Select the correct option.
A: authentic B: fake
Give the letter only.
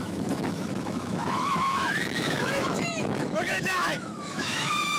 B